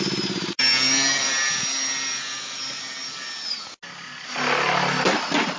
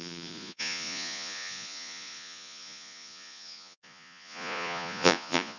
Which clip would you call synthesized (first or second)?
second